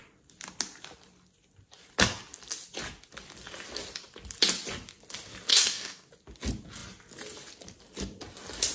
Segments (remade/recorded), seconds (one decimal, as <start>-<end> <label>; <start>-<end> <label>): 0.0-5.5 recorded; 5.5-6.1 remade; 6.1-8.7 recorded